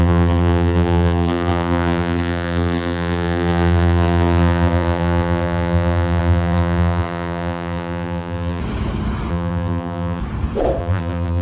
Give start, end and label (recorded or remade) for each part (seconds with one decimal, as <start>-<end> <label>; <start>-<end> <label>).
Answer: 0.0-8.6 remade; 8.6-9.3 recorded; 9.3-10.2 remade; 10.2-10.8 recorded; 10.8-11.4 remade